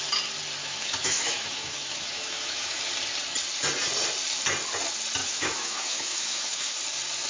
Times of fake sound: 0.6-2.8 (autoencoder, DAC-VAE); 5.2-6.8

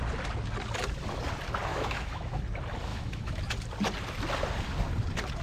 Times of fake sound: 1.7-2.4 (autoencoder, DAC-VAE); 2.9-3.4

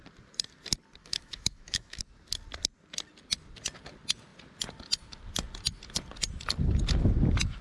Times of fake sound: 1.0-2.0 (autoencoder, DAC-VAE)

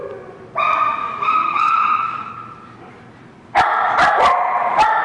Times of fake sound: 1.0-2.3 (autoencoder, DAC-VAE)

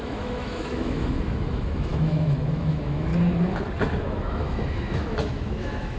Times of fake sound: 0.0-3.1 (autoencoder, DAC-VAE); 4.0-6.0